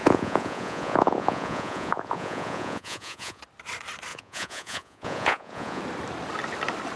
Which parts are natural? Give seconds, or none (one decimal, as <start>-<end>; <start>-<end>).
3.4-4.1; 5.8-7.0

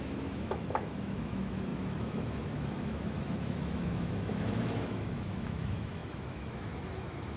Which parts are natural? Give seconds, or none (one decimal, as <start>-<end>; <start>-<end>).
none

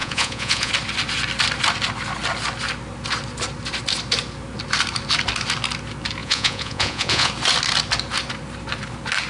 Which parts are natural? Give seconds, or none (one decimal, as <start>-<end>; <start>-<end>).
0.7-6.2; 7.3-9.3

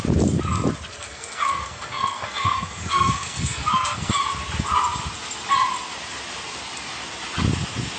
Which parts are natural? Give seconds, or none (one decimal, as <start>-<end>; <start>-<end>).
0.0-0.9; 4.1-8.0

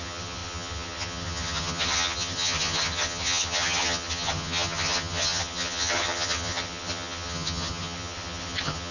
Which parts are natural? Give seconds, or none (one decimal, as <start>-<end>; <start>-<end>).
none